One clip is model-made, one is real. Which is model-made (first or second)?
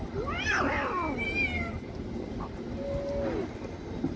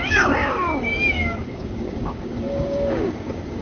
second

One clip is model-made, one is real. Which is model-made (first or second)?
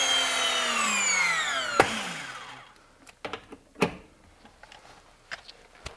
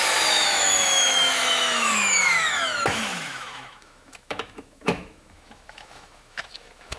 second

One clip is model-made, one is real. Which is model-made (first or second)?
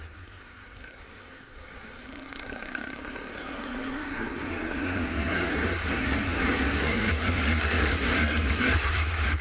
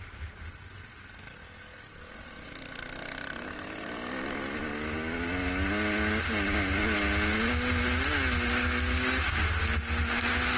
first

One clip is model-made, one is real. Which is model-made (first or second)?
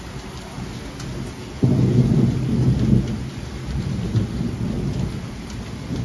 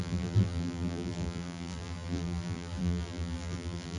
second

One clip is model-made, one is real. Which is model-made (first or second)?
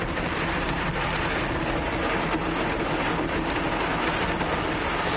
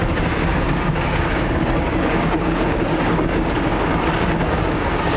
second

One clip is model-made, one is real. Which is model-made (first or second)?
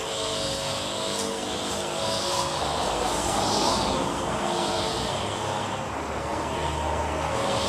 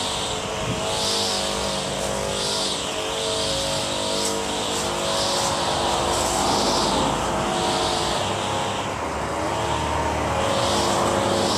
first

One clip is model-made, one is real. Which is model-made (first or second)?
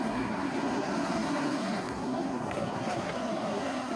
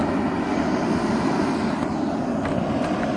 first